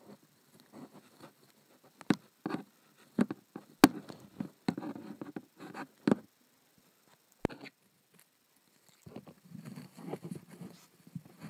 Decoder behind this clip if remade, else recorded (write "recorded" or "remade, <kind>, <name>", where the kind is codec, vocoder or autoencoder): recorded